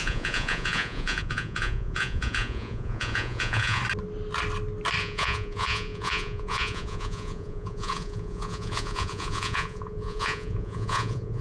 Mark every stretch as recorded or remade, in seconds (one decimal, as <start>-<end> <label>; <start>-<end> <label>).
0.0-3.8 remade; 3.8-5.0 recorded; 5.0-11.4 remade